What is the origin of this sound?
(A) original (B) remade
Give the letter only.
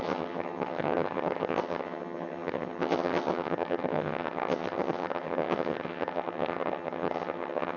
B